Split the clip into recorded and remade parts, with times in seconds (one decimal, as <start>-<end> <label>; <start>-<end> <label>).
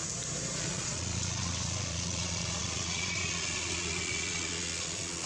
0.0-0.6 recorded; 0.6-5.3 remade